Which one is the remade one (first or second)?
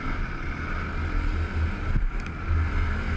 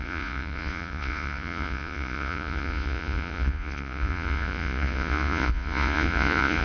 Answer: second